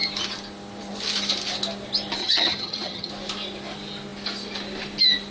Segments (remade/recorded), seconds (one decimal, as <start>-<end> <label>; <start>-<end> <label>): 0.0-2.2 recorded; 2.2-3.1 remade; 3.1-5.3 recorded